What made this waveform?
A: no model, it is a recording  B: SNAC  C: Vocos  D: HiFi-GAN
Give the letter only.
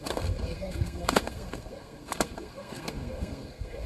B